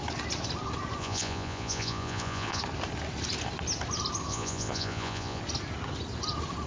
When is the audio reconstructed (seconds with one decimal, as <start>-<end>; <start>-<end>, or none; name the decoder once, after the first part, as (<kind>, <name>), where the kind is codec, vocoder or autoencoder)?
1.0-2.6 (vocoder, Vocos); 4.3-5.4